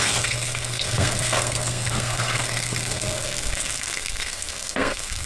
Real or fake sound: fake